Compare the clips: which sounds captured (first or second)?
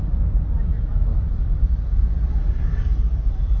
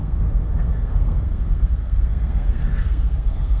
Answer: first